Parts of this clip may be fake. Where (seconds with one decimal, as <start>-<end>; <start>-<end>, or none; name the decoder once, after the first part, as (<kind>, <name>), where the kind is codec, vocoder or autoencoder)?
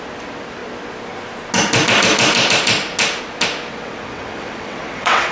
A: 3.7-5.3 (vocoder, WaveNeXt)